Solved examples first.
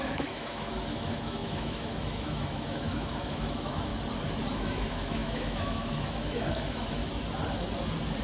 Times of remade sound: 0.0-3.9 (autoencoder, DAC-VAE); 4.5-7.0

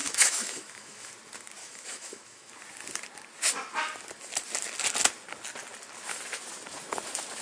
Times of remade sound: 0.0-1.1 (autoencoder, DAC-VAE); 1.6-2.5

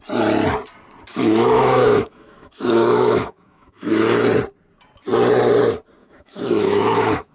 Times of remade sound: 1.1-4.0 (autoencoder, DAC-VAE); 6.0-7.3

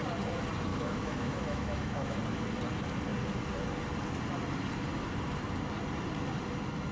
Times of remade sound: 0.7-2.2 (autoencoder, DAC-VAE)

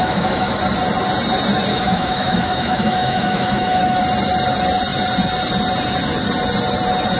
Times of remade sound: 0.0-0.6 (autoencoder, DAC-VAE); 1.7-4.0